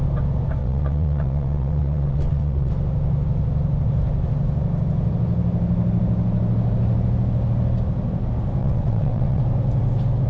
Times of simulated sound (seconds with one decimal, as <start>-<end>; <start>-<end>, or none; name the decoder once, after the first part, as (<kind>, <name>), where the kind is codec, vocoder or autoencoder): 0.6-2.7 (vocoder, WaveNeXt); 8.6-9.4